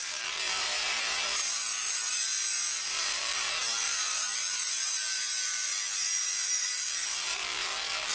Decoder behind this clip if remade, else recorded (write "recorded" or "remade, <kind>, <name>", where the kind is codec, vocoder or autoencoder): remade, vocoder, BigVGAN v2